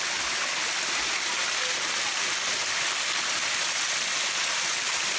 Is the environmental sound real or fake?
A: real